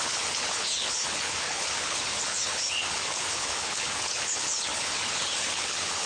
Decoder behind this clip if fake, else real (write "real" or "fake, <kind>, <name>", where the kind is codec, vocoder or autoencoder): fake, codec, HILCodec